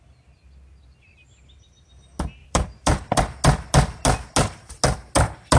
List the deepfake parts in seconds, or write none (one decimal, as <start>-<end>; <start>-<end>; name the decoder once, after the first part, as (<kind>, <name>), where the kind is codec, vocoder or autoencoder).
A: 2.4-3.2 (vocoder, BigVGAN v2)

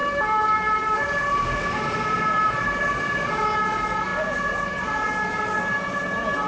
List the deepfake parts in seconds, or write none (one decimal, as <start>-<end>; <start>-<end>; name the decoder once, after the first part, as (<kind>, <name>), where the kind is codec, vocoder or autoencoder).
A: 0.0-3.3 (vocoder, BigVGAN v2)